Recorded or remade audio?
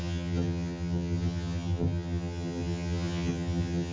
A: remade